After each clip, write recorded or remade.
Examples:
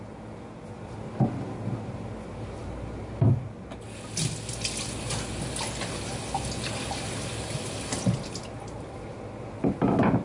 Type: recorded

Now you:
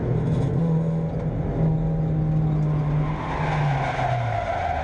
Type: recorded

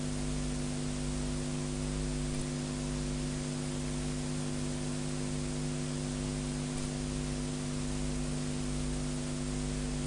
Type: recorded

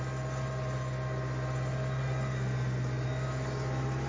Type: recorded